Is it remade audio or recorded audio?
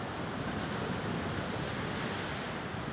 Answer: recorded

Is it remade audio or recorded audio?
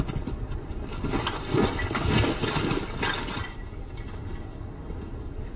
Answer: recorded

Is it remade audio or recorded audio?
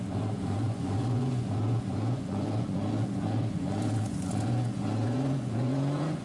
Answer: remade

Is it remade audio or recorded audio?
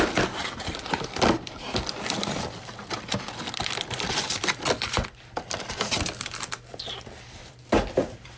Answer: remade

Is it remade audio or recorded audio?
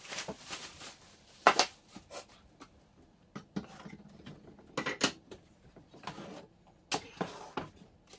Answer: recorded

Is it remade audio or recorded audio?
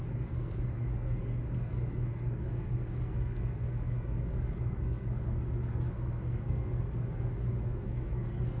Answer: remade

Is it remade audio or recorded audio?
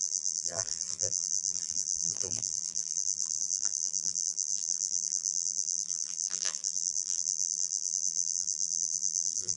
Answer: remade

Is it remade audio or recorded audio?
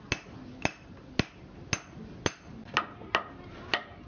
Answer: recorded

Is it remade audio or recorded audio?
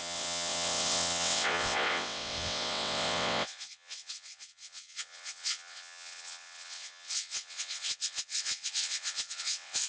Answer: remade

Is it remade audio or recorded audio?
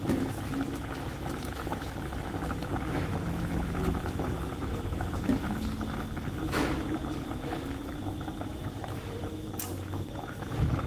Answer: remade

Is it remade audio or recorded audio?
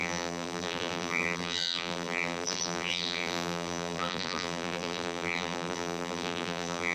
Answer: remade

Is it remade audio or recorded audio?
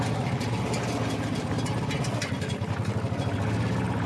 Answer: recorded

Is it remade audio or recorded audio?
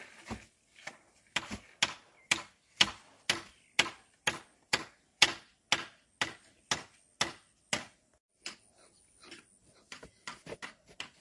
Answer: recorded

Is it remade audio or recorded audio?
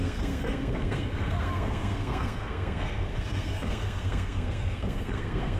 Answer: remade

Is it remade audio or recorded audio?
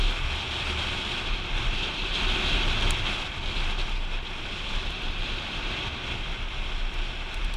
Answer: recorded